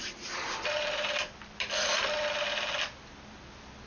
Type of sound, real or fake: real